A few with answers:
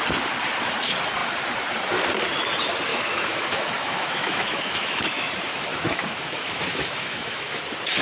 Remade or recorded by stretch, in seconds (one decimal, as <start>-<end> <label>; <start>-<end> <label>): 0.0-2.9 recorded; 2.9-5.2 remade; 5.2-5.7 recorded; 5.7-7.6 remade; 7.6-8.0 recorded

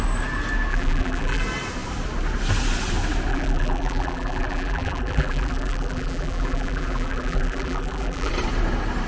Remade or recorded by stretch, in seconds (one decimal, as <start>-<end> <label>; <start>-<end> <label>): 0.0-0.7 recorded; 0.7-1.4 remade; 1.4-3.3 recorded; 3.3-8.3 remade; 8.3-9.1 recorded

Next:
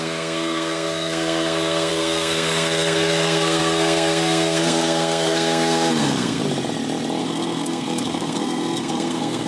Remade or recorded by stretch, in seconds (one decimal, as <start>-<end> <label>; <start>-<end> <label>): 0.0-6.4 remade; 6.4-7.2 recorded; 7.2-9.5 remade

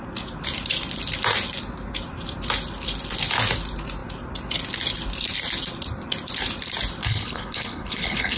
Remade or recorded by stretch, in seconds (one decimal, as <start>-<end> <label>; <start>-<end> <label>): 0.0-7.0 recorded; 7.0-8.4 remade

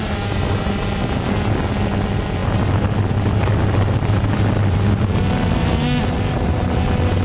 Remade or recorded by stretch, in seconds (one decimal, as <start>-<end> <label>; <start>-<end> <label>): 0.0-7.2 recorded